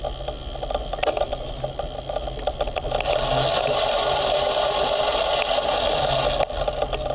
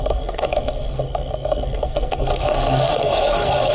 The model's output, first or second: second